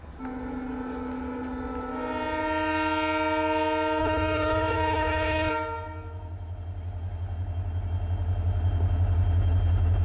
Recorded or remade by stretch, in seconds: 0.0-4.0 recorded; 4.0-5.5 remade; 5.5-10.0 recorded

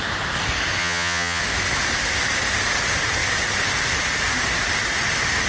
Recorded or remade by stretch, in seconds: 0.0-0.8 recorded; 0.8-1.4 remade; 1.4-5.5 recorded

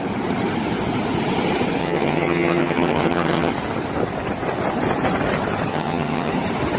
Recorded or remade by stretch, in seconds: 0.0-1.8 recorded; 1.8-3.5 remade; 3.5-5.7 recorded; 5.7-6.3 remade; 6.3-6.8 recorded

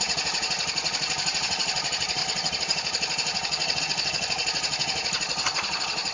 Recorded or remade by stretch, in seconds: 0.0-6.1 remade

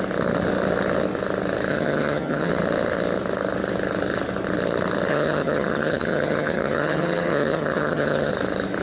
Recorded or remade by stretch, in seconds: 0.0-1.7 recorded; 1.7-2.5 remade; 2.5-5.1 recorded; 5.1-8.3 remade; 8.3-8.8 recorded

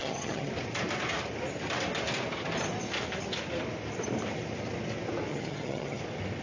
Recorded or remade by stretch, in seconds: 0.0-0.5 remade; 0.5-5.3 recorded; 5.3-6.0 remade; 6.0-6.4 recorded

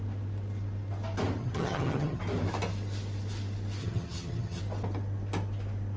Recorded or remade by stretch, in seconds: 0.0-1.4 recorded; 1.4-2.2 remade; 2.2-3.8 recorded; 3.8-4.6 remade; 4.6-6.0 recorded